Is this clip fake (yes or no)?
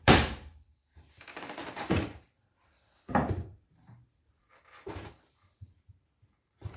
yes